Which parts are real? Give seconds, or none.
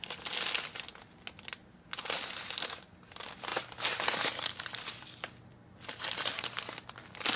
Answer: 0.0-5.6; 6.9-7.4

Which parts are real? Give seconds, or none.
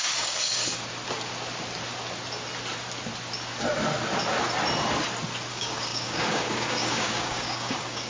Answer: 0.6-5.5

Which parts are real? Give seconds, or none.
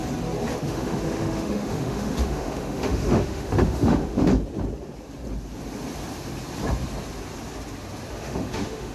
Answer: 0.0-0.6; 4.3-8.1